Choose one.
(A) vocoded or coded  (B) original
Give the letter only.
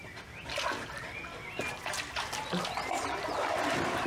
B